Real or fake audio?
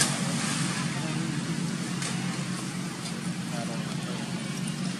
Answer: real